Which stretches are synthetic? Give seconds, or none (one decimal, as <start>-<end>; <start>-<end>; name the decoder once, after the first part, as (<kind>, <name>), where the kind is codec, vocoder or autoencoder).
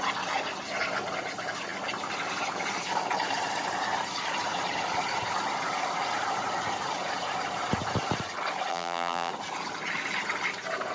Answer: 8.7-9.3 (vocoder, BigVGAN v2)